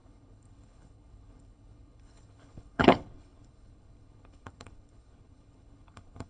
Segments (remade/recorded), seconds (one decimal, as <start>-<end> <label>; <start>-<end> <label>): 0.0-6.3 remade